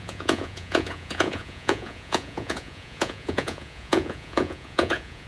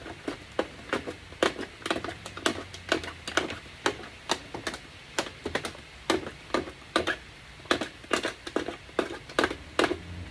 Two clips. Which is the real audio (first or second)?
second